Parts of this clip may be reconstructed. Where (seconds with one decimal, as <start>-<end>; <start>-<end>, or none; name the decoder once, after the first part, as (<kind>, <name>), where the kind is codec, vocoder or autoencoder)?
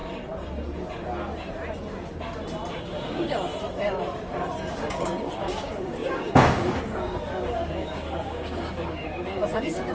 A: 2.8-3.5 (codec, DAC); 4.6-9.9